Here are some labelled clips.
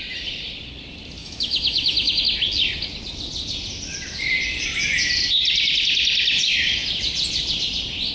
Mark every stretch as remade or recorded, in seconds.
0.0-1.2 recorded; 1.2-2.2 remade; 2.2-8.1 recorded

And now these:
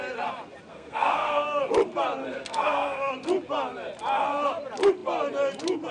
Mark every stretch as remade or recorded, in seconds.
0.0-0.7 recorded; 0.7-1.6 remade; 1.6-2.2 recorded; 2.2-3.1 remade; 3.1-5.9 recorded

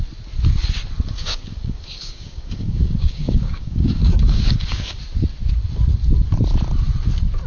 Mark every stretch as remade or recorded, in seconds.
0.0-1.2 recorded; 1.2-5.0 remade; 5.0-7.5 recorded

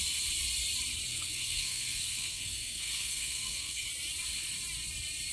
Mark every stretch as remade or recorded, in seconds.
0.0-1.1 recorded; 1.1-3.9 remade; 3.9-5.3 recorded